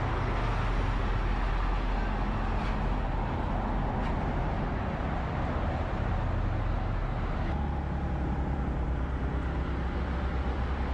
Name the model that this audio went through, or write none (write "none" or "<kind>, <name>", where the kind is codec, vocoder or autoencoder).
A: none